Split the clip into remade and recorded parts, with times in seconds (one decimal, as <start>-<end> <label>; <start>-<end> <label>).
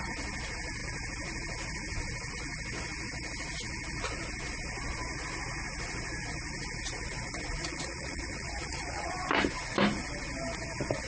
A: 0.0-7.6 recorded; 7.6-9.1 remade; 9.1-11.1 recorded